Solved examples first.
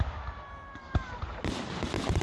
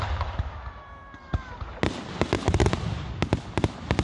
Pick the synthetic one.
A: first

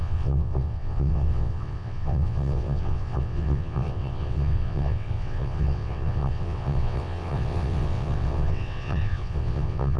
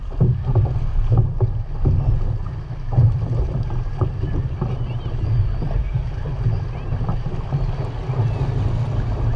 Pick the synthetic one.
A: first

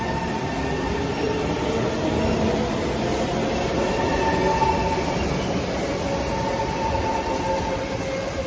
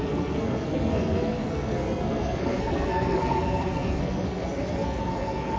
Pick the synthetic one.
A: second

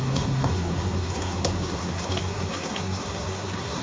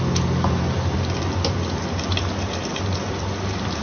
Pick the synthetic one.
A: first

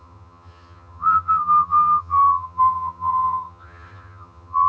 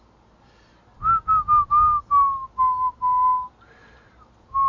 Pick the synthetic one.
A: first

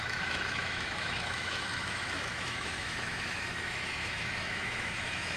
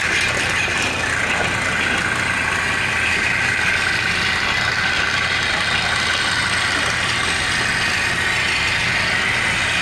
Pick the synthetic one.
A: first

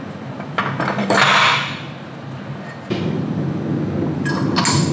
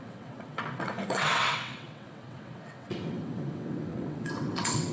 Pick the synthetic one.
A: second